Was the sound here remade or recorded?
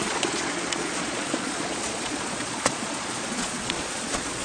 remade